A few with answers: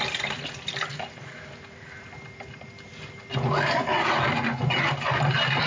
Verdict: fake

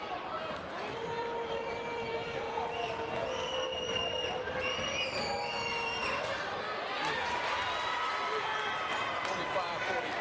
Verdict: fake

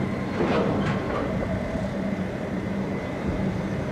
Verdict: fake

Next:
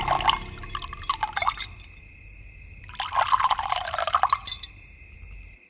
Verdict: real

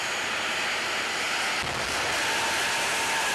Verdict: real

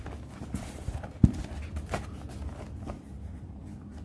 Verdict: real